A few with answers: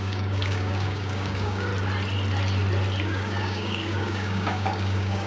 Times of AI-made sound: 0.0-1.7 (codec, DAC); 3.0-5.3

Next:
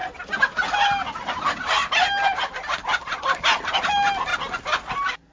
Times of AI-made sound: none